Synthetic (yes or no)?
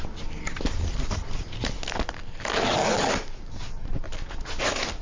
no